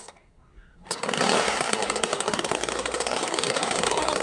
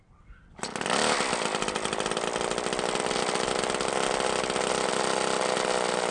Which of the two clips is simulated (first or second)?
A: first